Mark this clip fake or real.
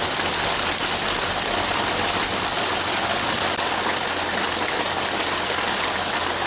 real